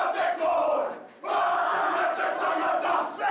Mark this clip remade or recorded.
recorded